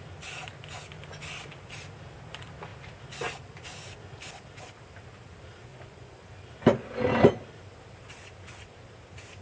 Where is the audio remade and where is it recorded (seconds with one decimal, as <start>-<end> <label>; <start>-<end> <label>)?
0.0-5.7 recorded; 5.7-6.2 remade; 6.2-9.4 recorded